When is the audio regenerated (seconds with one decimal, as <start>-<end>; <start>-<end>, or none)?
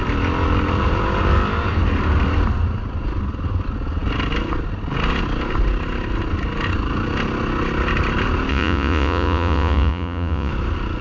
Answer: 8.5-10.5